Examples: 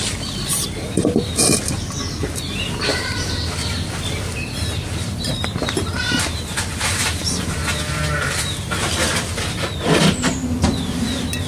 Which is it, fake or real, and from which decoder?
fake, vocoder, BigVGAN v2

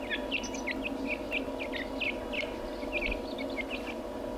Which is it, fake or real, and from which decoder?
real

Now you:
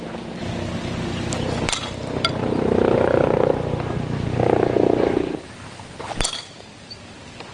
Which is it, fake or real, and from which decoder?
real